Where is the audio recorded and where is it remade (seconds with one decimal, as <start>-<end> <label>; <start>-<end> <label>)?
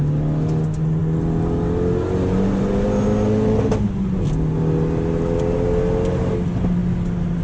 0.0-7.4 recorded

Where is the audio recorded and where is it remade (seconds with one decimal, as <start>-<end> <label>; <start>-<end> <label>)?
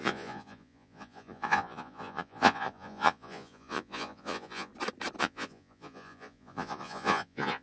0.0-4.7 remade; 4.7-5.2 recorded; 5.2-7.6 remade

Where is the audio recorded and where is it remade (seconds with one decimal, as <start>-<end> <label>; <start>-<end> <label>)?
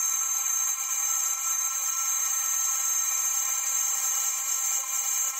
0.0-5.4 remade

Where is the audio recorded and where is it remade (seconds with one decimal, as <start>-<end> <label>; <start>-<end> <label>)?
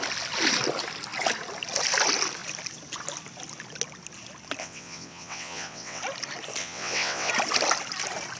0.0-4.6 recorded; 4.6-6.0 remade; 6.0-6.6 recorded; 6.6-7.3 remade; 7.3-8.4 recorded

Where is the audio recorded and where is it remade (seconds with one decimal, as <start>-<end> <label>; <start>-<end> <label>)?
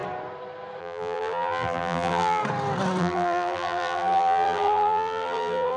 0.0-0.8 recorded; 0.8-2.4 remade; 2.4-3.0 recorded; 3.0-5.8 remade